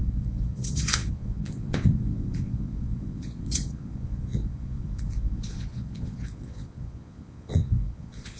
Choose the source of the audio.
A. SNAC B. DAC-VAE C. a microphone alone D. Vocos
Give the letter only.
D